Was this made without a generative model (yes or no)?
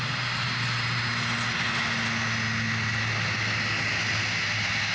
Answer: yes